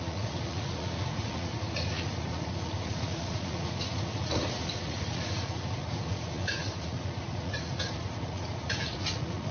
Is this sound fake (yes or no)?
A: yes